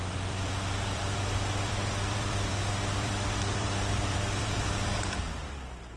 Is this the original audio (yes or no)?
no